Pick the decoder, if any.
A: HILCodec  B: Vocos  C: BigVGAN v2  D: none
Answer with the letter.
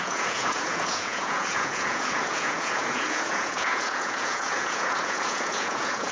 B